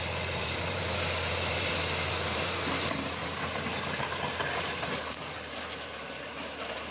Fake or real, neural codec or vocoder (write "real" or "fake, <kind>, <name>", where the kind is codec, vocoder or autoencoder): fake, vocoder, BigVGAN v2